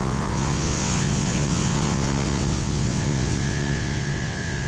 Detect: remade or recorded remade